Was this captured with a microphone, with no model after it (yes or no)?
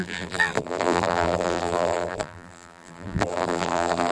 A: no